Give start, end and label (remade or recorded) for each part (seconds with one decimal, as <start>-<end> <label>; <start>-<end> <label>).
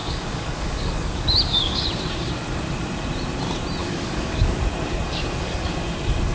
0.0-1.9 remade; 1.9-3.8 recorded; 3.8-4.6 remade; 4.6-6.3 recorded